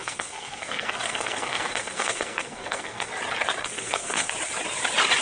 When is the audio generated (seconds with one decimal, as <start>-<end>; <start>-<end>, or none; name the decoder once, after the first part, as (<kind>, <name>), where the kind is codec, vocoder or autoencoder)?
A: 0.0-3.1 (codec, SNAC); 3.6-4.3